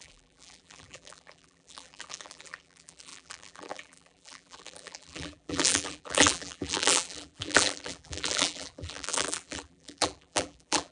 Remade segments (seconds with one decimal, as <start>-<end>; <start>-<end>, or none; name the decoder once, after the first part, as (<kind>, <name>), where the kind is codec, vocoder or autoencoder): 0.0-10.9 (vocoder, BigVGAN v2)